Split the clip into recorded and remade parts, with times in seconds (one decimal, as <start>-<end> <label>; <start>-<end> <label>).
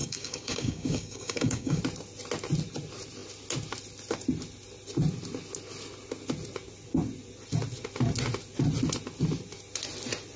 0.0-1.8 remade; 1.8-10.4 recorded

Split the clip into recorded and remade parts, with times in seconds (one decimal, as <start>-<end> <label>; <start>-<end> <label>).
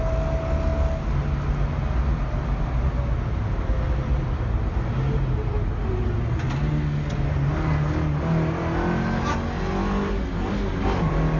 0.0-11.4 recorded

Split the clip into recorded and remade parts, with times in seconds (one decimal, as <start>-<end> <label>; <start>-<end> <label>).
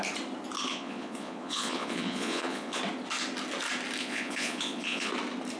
0.0-0.7 recorded; 0.7-2.8 remade; 2.8-4.0 recorded; 4.0-5.1 remade; 5.1-5.6 recorded